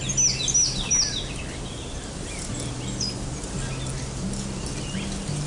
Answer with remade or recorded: recorded